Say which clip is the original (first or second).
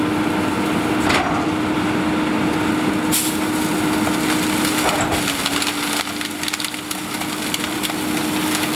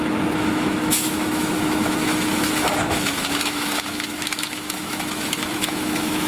first